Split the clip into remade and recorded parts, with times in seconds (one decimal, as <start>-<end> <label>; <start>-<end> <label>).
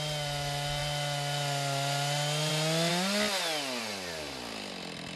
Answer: 0.0-5.2 recorded